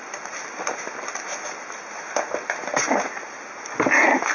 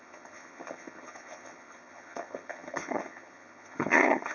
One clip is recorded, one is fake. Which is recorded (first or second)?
first